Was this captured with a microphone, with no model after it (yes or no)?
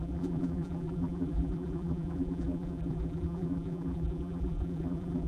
no